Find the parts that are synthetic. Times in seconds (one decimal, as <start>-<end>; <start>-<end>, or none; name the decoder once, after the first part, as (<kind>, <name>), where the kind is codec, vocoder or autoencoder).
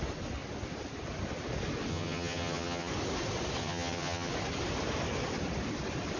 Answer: 1.9-2.9 (vocoder, HiFi-GAN); 3.6-4.3